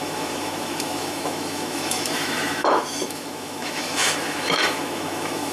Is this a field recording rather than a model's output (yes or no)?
no